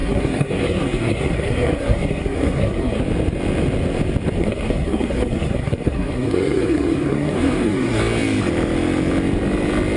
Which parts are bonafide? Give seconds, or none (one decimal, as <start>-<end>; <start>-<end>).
3.0-4.4; 8.0-10.0